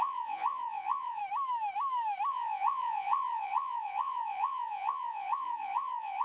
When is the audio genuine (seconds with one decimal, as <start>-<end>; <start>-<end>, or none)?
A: 1.2-2.3